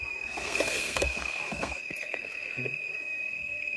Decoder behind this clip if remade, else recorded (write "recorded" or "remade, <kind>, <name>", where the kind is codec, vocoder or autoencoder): remade, codec, SNAC